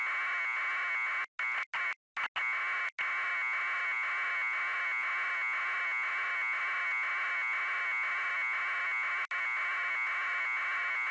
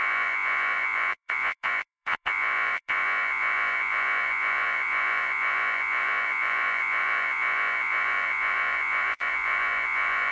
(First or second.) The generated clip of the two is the second